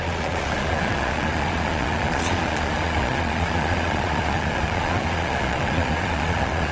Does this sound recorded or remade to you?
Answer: remade